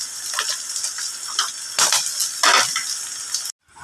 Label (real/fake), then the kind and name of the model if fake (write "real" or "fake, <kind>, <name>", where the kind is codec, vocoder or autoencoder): real